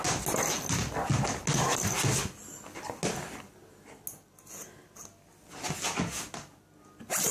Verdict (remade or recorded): recorded